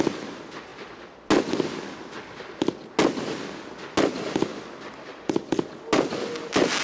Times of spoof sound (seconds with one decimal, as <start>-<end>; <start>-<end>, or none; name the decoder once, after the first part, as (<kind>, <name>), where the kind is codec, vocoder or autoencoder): none